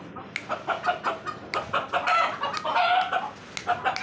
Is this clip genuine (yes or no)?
yes